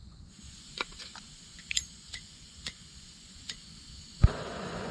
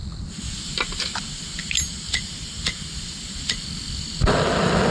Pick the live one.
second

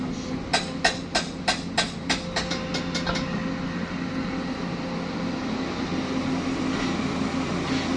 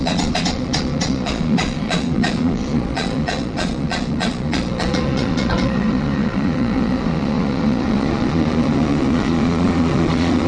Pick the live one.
first